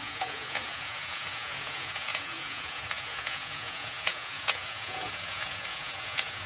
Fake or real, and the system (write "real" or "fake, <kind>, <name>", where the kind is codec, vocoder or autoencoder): fake, vocoder, Vocos